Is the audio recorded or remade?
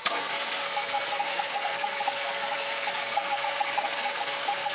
remade